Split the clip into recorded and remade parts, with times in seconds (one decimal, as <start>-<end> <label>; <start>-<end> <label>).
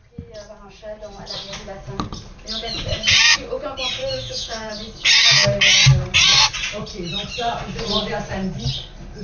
0.0-4.0 recorded; 4.0-4.7 remade; 4.7-9.2 recorded